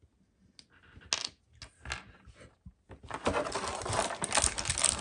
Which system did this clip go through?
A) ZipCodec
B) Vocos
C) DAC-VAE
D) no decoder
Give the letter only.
D